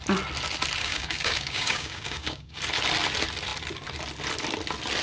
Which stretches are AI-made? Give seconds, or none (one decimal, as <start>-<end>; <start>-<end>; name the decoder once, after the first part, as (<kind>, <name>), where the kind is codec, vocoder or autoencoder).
0.8-2.6 (codec, DAC)